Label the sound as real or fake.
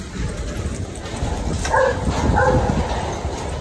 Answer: real